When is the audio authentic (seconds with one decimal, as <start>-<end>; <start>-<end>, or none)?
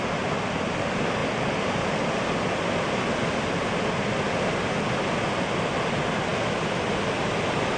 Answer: 0.0-1.2; 1.7-7.8